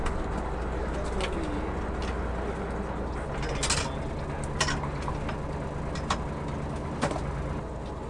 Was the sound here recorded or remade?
recorded